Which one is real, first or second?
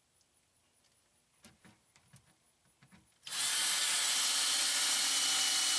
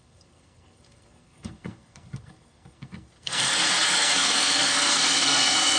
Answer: first